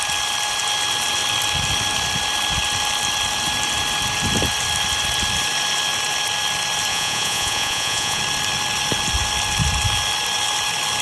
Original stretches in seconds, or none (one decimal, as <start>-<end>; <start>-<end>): 0.0-6.9; 8.2-11.0